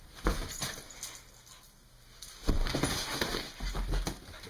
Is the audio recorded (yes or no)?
yes